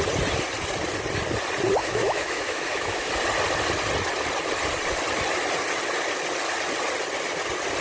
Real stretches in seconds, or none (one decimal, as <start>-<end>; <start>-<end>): 0.0-1.8; 3.1-7.8